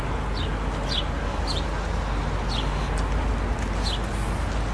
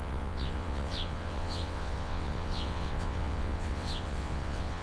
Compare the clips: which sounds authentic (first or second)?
first